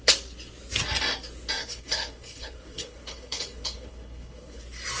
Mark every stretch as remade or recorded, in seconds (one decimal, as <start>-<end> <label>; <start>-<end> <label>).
0.0-1.6 recorded; 1.6-4.6 remade; 4.6-5.0 recorded